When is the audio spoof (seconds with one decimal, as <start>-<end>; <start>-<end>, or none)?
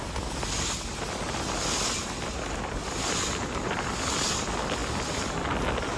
none